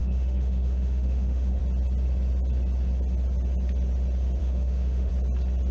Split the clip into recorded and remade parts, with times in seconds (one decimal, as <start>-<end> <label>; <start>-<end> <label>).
0.0-1.6 remade; 1.6-4.4 recorded; 4.4-5.1 remade; 5.1-5.7 recorded